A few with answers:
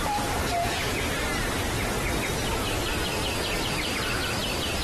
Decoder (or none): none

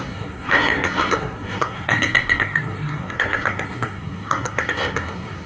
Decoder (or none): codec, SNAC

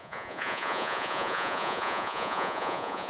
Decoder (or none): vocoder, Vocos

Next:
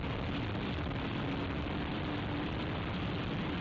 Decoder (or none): none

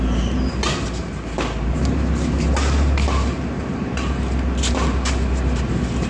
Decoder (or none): none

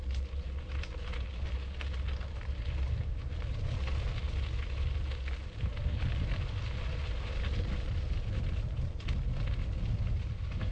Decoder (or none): none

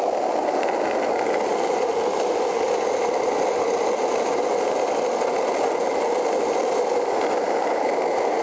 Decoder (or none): none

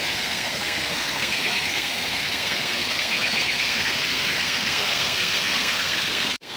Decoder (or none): codec, SNAC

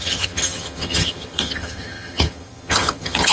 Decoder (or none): vocoder, HiFi-GAN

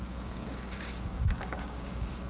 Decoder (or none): codec, DAC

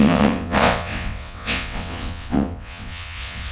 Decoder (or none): vocoder, WaveNeXt